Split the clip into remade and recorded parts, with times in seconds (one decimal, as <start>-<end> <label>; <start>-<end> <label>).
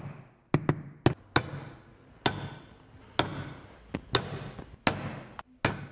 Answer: 0.0-5.9 recorded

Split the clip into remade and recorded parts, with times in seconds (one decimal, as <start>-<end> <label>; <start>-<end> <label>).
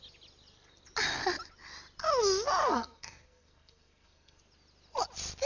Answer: 0.0-2.6 recorded; 2.6-4.4 remade; 4.4-5.5 recorded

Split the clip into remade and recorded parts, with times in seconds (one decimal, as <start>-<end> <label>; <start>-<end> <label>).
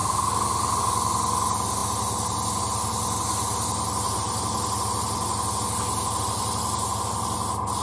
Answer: 0.0-0.8 remade; 0.8-7.8 recorded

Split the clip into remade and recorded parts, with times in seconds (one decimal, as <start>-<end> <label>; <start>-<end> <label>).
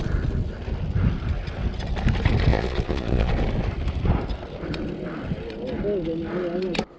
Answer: 0.0-2.5 recorded; 2.5-3.3 remade; 3.3-7.0 recorded